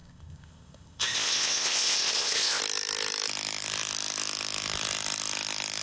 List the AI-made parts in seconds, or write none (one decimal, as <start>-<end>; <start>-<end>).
0.0-2.6